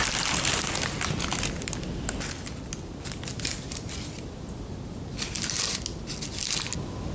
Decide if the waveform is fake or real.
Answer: real